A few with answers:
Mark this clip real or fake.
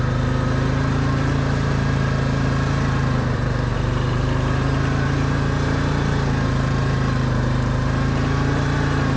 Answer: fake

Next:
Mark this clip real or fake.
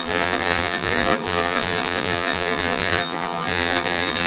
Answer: fake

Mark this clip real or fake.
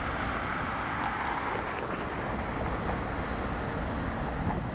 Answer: real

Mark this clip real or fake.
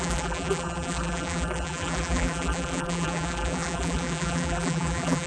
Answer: fake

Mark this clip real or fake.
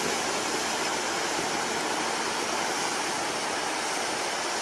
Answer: real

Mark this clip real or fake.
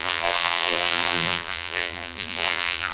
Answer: fake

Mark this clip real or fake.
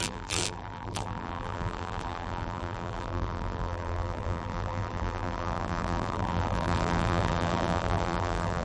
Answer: fake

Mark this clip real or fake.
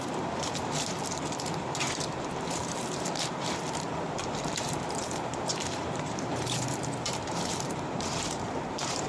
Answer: fake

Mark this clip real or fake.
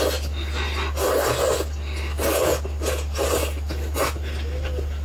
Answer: real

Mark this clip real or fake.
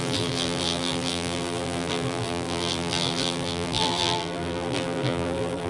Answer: fake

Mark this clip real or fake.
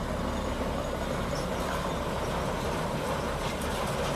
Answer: real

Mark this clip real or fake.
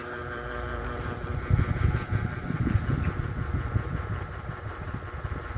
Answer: fake